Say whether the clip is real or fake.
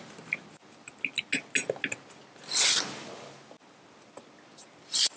real